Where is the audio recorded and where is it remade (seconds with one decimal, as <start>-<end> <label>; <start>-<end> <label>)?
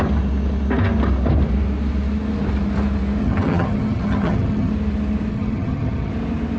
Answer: 0.0-3.2 recorded; 3.2-4.7 remade; 4.7-5.3 recorded; 5.3-6.1 remade; 6.1-6.6 recorded